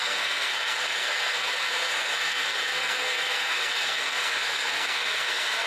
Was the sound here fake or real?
fake